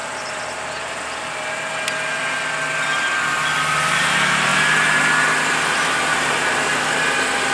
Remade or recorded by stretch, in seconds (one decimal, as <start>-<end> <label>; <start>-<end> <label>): 0.0-6.1 recorded; 6.1-7.0 remade; 7.0-7.5 recorded